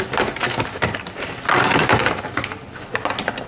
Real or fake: real